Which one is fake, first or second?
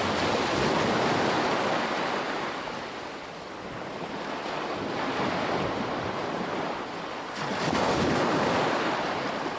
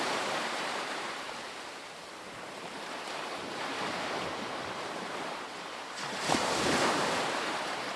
second